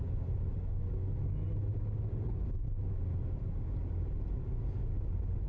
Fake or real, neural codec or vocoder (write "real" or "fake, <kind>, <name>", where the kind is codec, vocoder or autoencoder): real